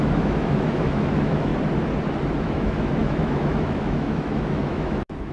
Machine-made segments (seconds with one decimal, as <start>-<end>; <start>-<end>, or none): 0.0-1.5; 2.4-5.3

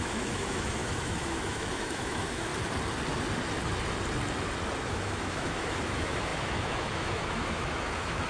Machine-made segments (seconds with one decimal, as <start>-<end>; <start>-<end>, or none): 0.0-2.5; 4.9-8.3